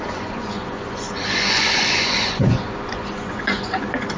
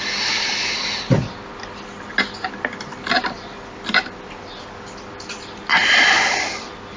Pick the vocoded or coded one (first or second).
first